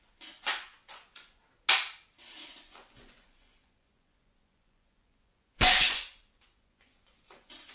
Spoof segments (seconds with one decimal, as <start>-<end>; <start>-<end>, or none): 0.0-1.4; 2.5-7.7